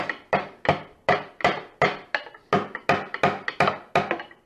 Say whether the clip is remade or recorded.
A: recorded